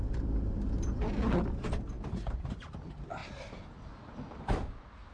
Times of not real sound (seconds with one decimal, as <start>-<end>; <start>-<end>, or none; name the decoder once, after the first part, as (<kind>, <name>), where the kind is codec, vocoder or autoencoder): 0.0-3.2 (vocoder, BigVGAN v2); 3.8-5.1